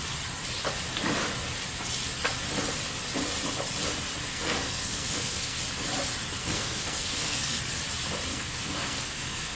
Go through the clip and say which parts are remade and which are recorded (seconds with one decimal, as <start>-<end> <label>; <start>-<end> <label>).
0.0-4.3 recorded; 4.3-5.6 remade; 5.6-6.4 recorded; 6.4-7.6 remade; 7.6-8.3 recorded; 8.3-9.6 remade